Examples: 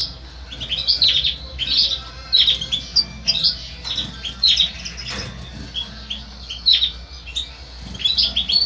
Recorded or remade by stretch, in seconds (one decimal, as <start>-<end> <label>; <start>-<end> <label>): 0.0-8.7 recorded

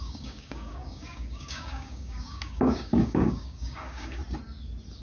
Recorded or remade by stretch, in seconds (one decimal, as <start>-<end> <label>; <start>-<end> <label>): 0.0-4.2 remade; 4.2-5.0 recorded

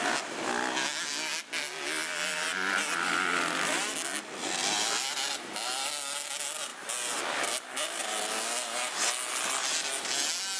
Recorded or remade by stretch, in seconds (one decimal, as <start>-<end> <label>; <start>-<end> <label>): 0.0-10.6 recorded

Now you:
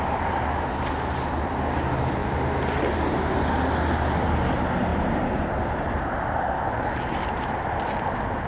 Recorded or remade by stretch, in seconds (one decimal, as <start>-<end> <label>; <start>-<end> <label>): 0.0-4.9 recorded; 4.9-7.5 remade; 7.5-8.5 recorded

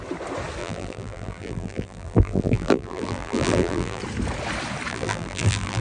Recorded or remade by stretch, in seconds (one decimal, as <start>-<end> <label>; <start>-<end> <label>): 0.0-0.6 recorded; 0.6-4.0 remade; 4.0-4.9 recorded; 4.9-5.8 remade

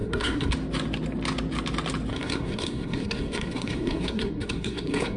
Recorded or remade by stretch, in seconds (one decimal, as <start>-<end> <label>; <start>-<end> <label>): 0.0-0.5 remade; 0.5-2.1 recorded; 2.1-5.2 remade

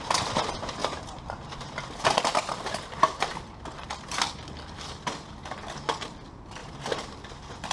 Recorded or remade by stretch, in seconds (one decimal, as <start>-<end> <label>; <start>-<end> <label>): 0.0-0.8 recorded; 0.8-3.2 remade; 3.2-6.6 recorded; 6.6-7.3 remade; 7.3-7.7 recorded